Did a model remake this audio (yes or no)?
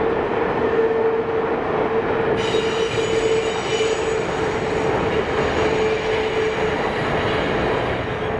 no